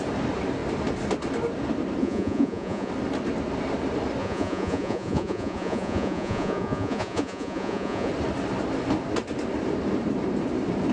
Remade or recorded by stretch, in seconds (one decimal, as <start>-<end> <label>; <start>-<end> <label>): 0.0-2.0 recorded; 2.0-2.9 remade; 2.9-4.2 recorded; 4.2-8.1 remade; 8.1-10.9 recorded